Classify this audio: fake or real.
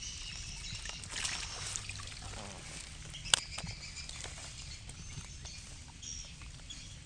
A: real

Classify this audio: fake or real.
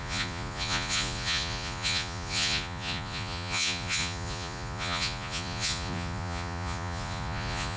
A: fake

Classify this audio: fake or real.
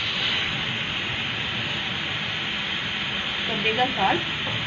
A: real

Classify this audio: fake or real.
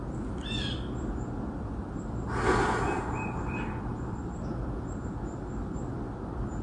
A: real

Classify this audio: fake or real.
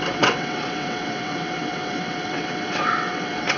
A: fake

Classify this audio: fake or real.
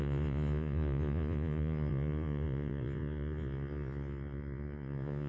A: fake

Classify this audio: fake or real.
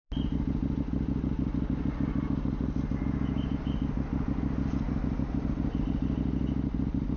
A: real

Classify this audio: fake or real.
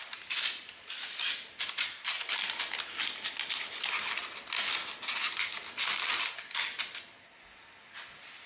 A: real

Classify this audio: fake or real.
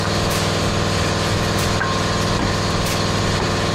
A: real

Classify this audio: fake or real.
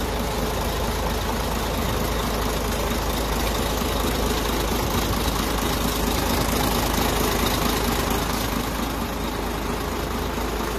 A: real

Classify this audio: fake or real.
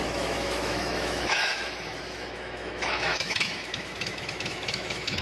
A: fake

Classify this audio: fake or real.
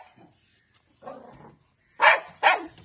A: real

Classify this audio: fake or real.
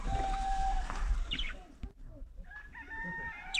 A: fake